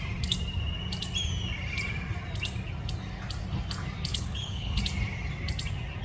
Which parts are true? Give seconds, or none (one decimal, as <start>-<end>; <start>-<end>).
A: 0.0-4.1; 4.8-6.0